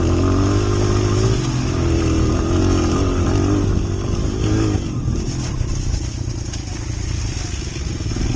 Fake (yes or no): no